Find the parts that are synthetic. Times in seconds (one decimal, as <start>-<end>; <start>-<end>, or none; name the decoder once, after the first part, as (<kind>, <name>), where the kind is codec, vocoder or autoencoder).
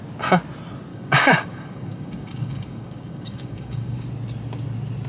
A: 0.9-4.0 (codec, DAC)